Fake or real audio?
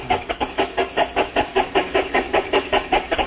fake